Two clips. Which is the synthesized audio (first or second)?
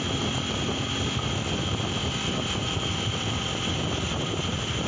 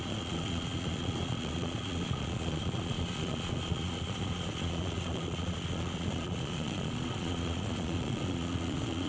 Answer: second